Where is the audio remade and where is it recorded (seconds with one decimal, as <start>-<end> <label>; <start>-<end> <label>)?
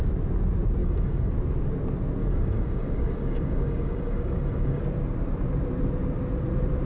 0.0-0.8 recorded; 0.8-1.3 remade; 1.3-2.2 recorded; 2.2-4.8 remade; 4.8-6.9 recorded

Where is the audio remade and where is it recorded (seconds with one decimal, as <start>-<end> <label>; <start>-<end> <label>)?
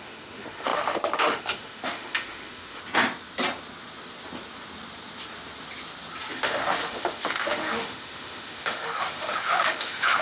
0.0-2.8 remade; 2.8-6.3 recorded; 6.3-10.2 remade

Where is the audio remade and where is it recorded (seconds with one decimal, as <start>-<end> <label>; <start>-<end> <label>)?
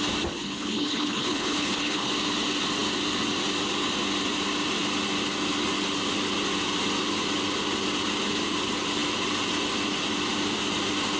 0.0-0.4 recorded; 0.4-2.1 remade; 2.1-11.2 recorded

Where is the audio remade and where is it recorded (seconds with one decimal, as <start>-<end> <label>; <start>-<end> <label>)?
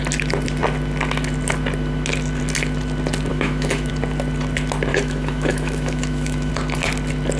0.0-3.3 recorded; 3.3-3.9 remade; 3.9-4.9 recorded; 4.9-6.5 remade; 6.5-7.4 recorded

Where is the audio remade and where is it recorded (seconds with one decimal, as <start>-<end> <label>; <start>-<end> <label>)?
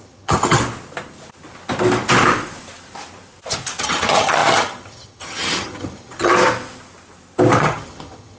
0.0-0.6 remade; 0.6-3.8 recorded; 3.8-6.3 remade; 6.3-7.6 recorded; 7.6-8.4 remade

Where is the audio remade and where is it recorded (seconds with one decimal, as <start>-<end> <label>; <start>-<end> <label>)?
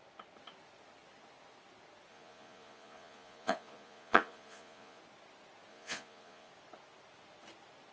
0.0-2.1 recorded; 2.1-5.0 remade; 5.0-5.7 recorded; 5.7-6.5 remade; 6.5-7.9 recorded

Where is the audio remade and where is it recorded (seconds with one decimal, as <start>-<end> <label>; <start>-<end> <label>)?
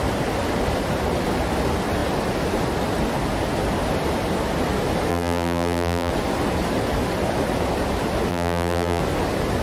0.0-5.1 recorded; 5.1-6.1 remade; 6.1-8.3 recorded; 8.3-9.0 remade; 9.0-9.6 recorded